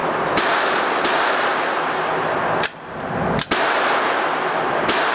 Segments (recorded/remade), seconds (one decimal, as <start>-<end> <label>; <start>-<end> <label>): 0.0-1.5 remade; 1.5-4.6 recorded; 4.6-5.1 remade